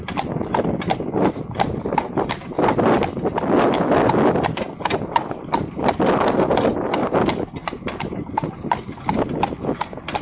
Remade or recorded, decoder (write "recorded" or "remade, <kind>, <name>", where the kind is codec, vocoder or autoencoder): recorded